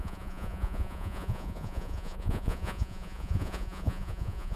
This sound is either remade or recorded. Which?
remade